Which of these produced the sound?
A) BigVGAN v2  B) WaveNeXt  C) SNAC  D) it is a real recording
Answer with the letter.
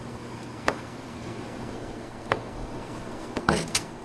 C